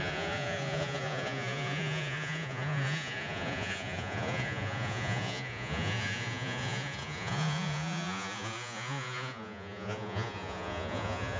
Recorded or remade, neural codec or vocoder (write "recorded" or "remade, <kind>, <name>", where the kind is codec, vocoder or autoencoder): remade, vocoder, Vocos